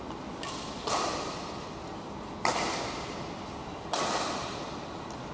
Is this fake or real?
real